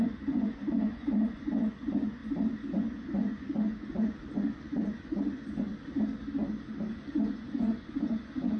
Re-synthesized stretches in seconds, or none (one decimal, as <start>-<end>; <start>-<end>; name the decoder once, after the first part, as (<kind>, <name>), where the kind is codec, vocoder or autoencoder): 0.0-2.2 (vocoder, Vocos); 2.7-5.7; 6.9-8.6